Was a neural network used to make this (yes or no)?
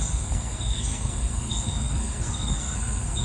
yes